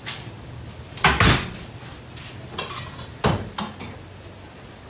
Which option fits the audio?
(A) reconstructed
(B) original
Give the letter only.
B